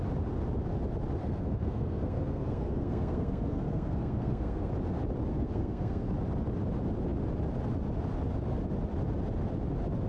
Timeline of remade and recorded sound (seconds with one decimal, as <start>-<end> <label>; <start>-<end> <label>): 0.0-1.2 recorded; 1.2-4.7 remade; 4.7-5.3 recorded; 5.3-6.1 remade; 6.1-10.1 recorded